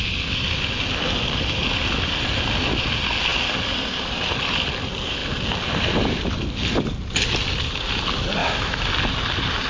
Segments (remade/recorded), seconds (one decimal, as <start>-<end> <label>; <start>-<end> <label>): 0.0-8.4 recorded; 8.4-8.9 remade; 8.9-9.7 recorded